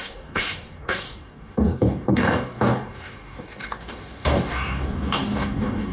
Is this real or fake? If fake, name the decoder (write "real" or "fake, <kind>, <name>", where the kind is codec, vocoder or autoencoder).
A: fake, codec, DAC